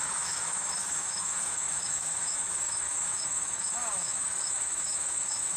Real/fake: fake